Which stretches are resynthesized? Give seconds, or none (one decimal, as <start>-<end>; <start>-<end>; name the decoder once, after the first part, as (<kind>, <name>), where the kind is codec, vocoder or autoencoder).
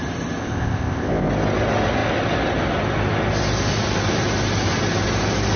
0.4-1.3 (codec, ZipCodec)